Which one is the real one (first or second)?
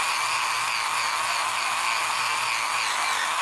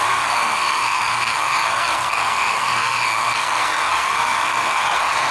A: first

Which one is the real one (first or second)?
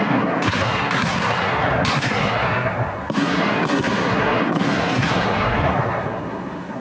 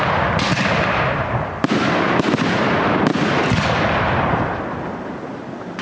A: second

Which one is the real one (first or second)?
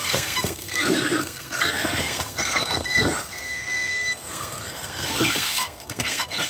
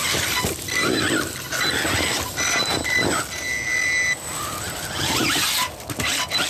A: second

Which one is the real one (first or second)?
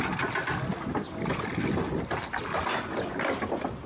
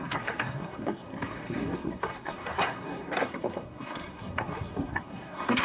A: first